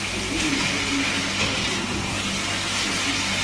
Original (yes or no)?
yes